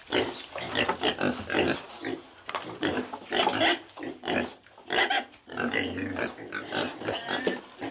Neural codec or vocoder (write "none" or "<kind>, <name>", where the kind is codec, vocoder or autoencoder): none